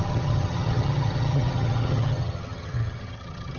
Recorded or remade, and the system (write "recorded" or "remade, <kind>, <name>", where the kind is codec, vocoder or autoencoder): remade, vocoder, HiFi-GAN